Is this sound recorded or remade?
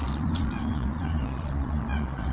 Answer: remade